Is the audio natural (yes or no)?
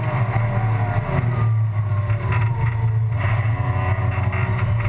yes